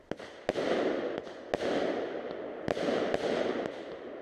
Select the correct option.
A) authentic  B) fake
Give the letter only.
A